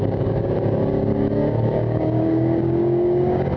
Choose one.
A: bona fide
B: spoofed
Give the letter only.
B